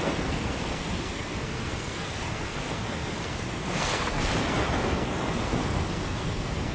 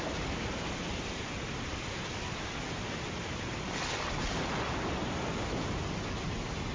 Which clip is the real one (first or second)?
second